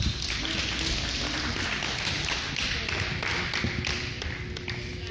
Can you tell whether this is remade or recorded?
recorded